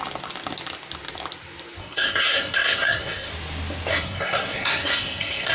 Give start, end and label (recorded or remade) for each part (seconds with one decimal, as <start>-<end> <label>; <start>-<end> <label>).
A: 0.0-1.8 recorded; 1.8-3.3 remade; 3.3-3.9 recorded; 3.9-5.5 remade